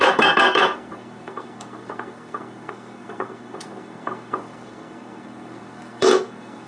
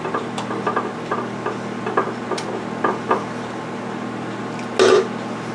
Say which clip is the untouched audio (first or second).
second